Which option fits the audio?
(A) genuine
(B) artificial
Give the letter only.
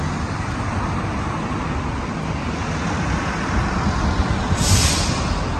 A